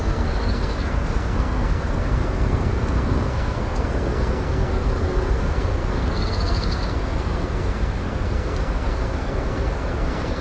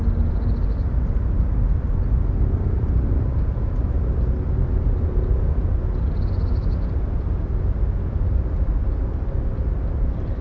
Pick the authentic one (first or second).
second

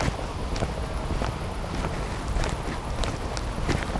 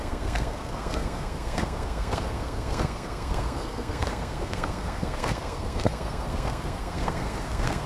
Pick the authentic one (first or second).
first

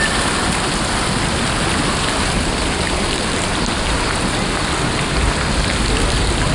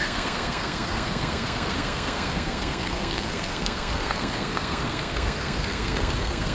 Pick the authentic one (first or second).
first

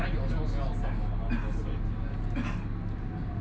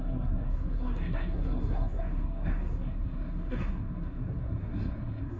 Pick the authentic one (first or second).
first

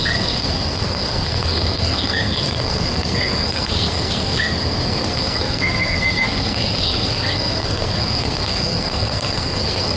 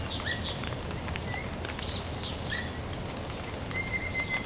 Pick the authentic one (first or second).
second